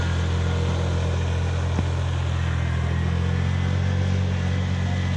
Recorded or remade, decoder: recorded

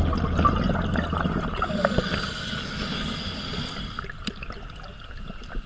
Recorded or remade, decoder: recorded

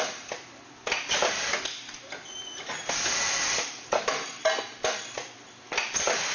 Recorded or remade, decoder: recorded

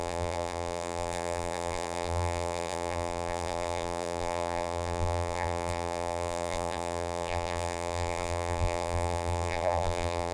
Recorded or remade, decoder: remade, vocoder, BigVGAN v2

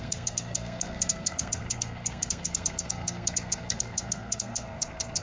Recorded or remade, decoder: remade, codec, SNAC